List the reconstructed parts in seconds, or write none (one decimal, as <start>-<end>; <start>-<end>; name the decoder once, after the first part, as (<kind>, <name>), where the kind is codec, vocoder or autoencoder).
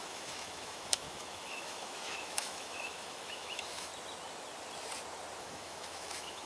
0.0-3.9 (autoencoder, DAC-VAE); 5.4-6.5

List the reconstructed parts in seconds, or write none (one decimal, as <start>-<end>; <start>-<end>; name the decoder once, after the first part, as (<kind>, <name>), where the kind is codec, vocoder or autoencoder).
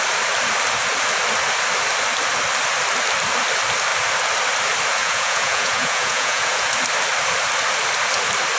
5.0-6.7 (vocoder, Vocos)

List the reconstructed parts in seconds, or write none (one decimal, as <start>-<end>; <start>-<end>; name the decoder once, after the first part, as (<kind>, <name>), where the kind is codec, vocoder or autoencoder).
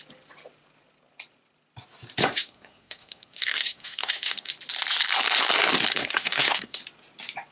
2.2-4.5 (codec, SNAC); 5.9-6.8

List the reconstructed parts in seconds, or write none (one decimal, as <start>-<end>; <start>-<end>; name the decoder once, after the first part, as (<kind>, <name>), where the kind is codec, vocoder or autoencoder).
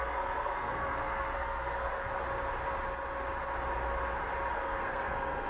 0.0-2.1 (codec, SNAC); 4.5-5.5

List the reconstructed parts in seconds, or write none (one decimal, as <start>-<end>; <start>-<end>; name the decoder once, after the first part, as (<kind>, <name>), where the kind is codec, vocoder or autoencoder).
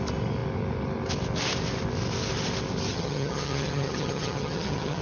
2.9-5.0 (vocoder, HiFi-GAN)